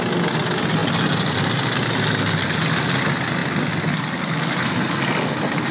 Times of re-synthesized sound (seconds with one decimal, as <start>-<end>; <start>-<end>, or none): none